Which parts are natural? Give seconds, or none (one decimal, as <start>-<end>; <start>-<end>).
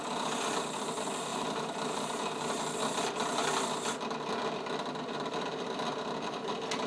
0.0-1.3; 2.6-6.9